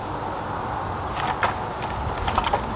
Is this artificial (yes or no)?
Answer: no